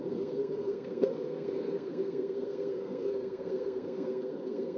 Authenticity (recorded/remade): remade